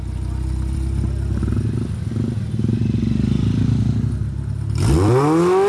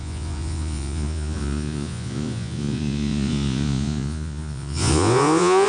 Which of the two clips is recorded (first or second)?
first